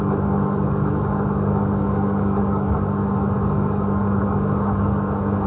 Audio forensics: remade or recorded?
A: remade